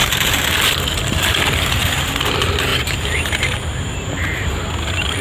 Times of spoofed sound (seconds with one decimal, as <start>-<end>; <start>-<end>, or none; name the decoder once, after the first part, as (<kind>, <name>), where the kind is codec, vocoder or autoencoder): 0.0-0.7 (vocoder, BigVGAN v2); 2.7-4.5